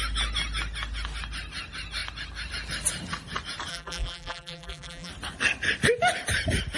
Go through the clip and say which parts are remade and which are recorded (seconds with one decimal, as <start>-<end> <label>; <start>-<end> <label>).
0.0-3.7 recorded; 3.7-5.1 remade; 5.1-6.8 recorded